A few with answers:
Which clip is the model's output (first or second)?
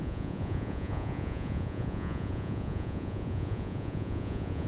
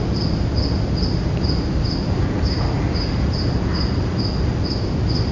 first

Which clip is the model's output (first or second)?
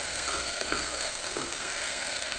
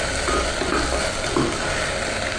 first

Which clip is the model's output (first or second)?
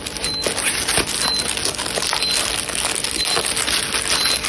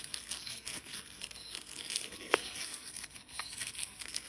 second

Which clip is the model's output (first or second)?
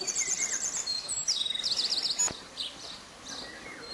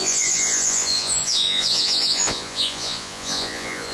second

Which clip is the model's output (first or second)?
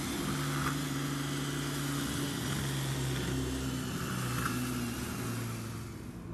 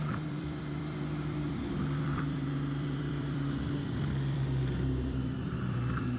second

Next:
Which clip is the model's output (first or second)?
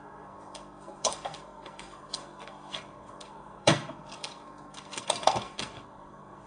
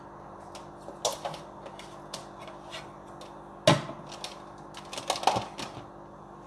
first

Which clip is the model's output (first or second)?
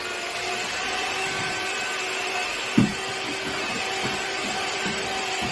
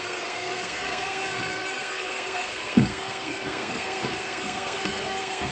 second